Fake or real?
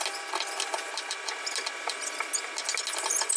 real